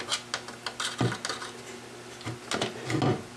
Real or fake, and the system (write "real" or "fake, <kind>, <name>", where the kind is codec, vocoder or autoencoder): real